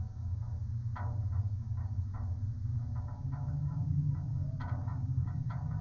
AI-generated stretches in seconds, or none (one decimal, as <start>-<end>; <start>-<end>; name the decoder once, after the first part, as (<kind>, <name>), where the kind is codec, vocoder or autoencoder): 0.0-0.4 (codec, DAC); 1.4-2.1; 3.0-5.8